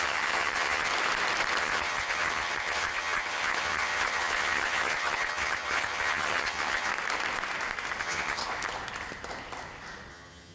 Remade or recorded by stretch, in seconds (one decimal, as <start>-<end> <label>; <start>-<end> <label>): 0.0-0.9 remade; 0.9-1.6 recorded; 1.6-6.9 remade; 6.9-8.0 recorded; 8.0-8.4 remade; 8.4-10.1 recorded; 10.1-10.5 remade